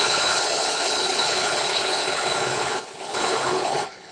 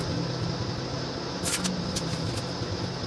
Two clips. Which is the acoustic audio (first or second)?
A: second